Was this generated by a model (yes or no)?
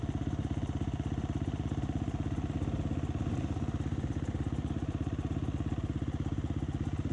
no